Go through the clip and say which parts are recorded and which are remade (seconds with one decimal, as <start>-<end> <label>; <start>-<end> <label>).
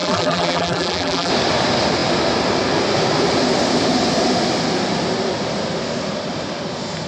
0.0-1.3 remade; 1.3-7.1 recorded